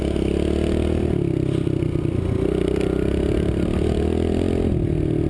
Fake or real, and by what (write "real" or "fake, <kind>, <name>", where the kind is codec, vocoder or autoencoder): real